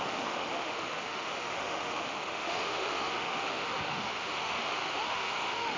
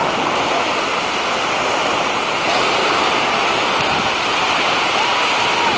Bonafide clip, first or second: second